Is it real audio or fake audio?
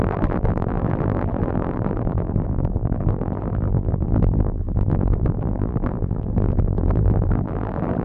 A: fake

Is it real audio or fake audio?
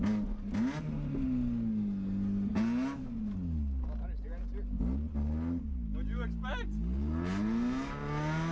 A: real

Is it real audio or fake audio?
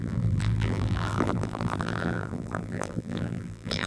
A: fake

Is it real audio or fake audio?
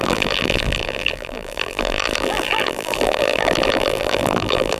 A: fake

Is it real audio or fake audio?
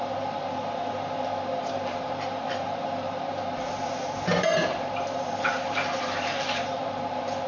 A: fake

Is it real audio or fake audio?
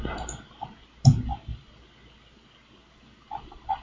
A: real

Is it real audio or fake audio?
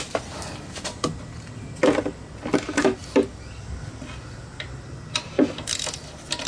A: real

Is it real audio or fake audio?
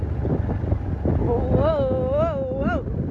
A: real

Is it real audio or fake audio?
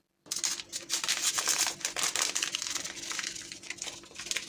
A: real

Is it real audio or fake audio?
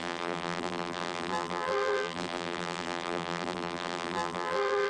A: fake